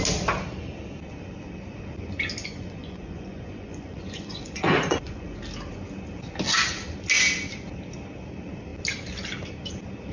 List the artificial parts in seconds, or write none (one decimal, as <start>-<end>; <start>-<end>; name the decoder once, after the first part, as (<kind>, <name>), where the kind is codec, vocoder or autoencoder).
2.4-5.4 (vocoder, Vocos)